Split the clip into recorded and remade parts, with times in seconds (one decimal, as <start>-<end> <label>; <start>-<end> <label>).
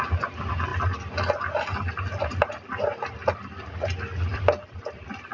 0.0-4.3 recorded; 4.3-5.3 remade